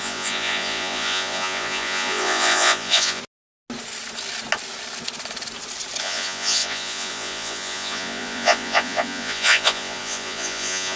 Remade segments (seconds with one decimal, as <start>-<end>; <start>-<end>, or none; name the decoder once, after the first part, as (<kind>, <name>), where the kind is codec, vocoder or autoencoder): 0.0-3.2 (vocoder, Vocos); 6.0-11.0

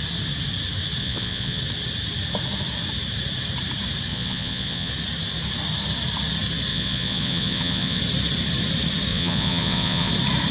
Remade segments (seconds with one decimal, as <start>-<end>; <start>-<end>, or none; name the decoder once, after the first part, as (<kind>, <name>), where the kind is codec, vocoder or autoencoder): 1.0-1.6 (vocoder, Vocos); 4.1-4.9; 6.7-8.0; 9.1-10.1

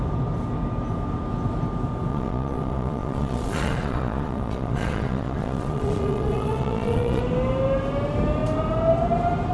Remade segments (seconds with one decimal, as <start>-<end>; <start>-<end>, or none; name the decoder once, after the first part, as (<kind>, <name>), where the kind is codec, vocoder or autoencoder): 2.1-7.2 (vocoder, Vocos)

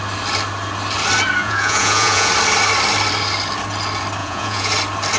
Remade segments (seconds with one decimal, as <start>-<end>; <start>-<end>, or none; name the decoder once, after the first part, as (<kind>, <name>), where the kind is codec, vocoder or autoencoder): 1.4-2.3 (vocoder, Vocos); 4.2-4.7

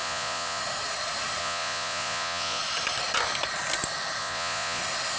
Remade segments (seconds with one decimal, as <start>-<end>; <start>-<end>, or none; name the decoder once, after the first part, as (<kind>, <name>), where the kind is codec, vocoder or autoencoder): 0.0-0.6 (vocoder, Vocos); 1.4-2.6; 4.2-4.8

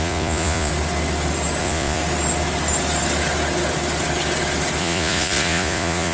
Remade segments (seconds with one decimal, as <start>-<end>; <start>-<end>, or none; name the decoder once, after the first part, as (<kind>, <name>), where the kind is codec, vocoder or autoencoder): 0.0-0.7 (vocoder, Vocos); 1.6-2.0; 4.8-6.1